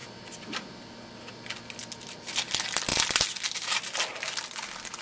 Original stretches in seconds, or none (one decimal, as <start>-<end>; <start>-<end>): 0.0-5.0